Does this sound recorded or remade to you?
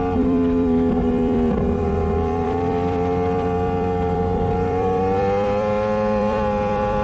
remade